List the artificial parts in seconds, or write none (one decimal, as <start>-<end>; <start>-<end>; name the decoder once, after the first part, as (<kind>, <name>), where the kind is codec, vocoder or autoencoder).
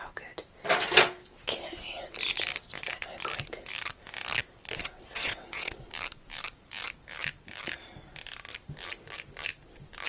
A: 4.8-5.9 (vocoder, WaveNeXt)